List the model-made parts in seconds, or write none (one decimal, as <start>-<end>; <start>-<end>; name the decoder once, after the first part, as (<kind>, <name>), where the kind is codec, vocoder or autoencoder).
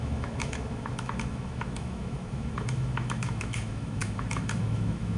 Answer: 0.0-5.2 (autoencoder, DAC-VAE)